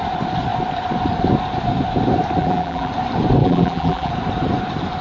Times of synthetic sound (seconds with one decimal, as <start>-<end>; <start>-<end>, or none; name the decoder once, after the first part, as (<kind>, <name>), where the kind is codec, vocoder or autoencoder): 2.4-2.9 (vocoder, BigVGAN v2); 3.4-4.1